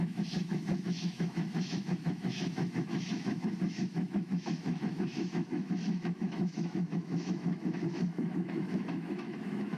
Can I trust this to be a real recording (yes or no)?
no